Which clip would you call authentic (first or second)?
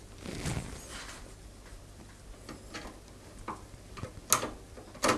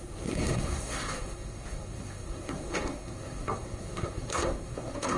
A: first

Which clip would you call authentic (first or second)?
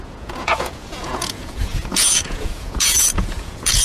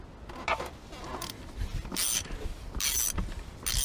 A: second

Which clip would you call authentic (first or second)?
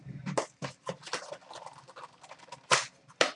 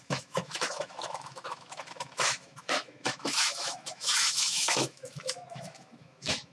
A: first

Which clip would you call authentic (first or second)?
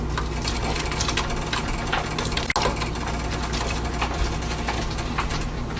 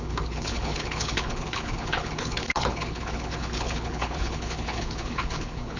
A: first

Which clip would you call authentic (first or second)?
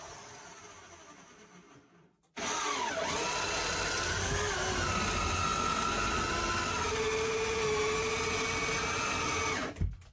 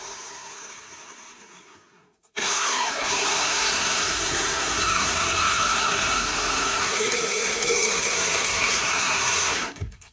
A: first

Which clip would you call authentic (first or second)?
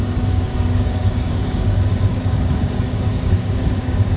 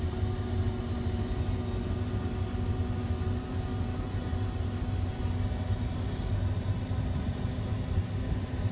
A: second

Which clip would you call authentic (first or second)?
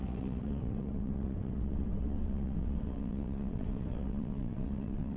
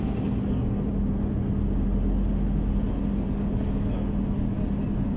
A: second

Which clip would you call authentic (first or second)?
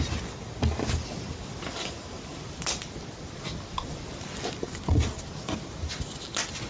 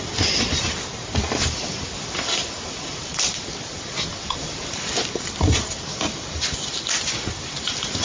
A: first